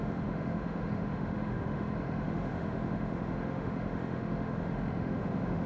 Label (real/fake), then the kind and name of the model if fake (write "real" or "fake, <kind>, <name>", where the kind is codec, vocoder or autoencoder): fake, autoencoder, DAC-VAE